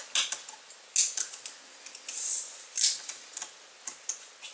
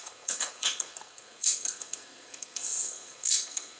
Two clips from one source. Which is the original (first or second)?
first